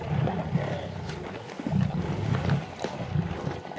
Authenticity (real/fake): real